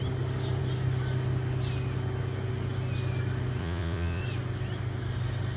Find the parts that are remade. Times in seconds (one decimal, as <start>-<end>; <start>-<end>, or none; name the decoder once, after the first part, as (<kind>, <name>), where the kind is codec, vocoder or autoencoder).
3.6-4.2 (vocoder, Vocos)